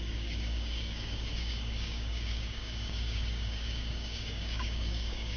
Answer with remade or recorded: remade